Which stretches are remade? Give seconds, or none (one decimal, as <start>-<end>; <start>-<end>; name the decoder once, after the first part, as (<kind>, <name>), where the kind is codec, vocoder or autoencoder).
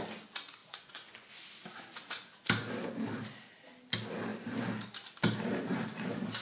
0.6-1.4 (vocoder, Vocos)